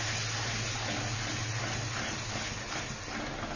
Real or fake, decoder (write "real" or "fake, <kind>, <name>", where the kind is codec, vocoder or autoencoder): real